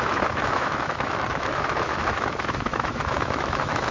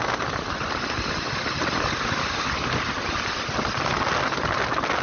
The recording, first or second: second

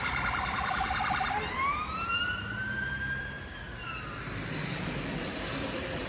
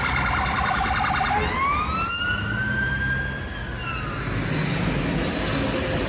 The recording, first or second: second